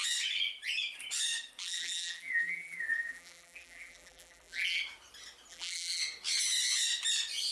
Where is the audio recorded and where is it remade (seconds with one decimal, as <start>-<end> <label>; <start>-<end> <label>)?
0.0-1.6 recorded; 1.6-4.8 remade; 4.8-5.5 recorded; 5.5-6.0 remade; 6.0-7.5 recorded